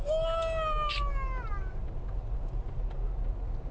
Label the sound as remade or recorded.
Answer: recorded